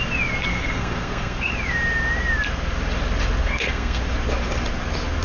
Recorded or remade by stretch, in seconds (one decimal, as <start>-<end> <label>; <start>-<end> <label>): 0.0-0.5 recorded; 0.5-1.5 remade; 1.5-3.4 recorded; 3.4-4.0 remade; 4.0-5.2 recorded